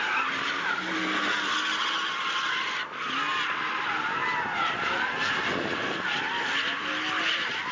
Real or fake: real